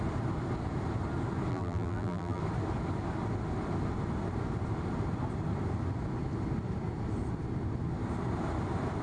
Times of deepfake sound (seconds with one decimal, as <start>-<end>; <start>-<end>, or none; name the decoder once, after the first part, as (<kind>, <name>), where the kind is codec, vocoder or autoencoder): 1.5-2.4 (vocoder, BigVGAN v2)